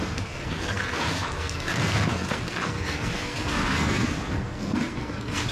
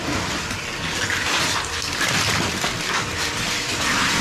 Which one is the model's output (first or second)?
first